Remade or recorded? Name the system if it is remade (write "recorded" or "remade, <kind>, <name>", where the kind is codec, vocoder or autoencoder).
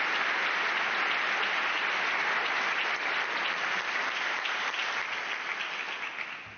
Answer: recorded